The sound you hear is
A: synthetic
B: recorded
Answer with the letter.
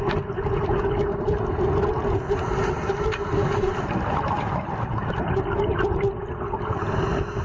B